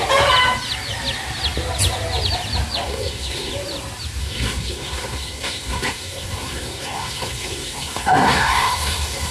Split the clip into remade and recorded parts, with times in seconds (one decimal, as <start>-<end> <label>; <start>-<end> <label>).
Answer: 0.0-2.8 recorded; 2.8-3.5 remade; 3.5-4.2 recorded; 4.2-9.3 remade